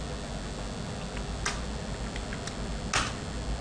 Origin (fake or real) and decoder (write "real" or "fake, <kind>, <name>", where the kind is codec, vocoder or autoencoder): real